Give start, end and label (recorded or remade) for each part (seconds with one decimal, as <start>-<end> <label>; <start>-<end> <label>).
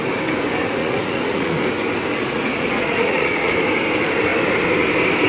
0.0-0.8 recorded; 0.8-1.6 remade; 1.6-2.1 recorded; 2.1-3.5 remade; 3.5-5.3 recorded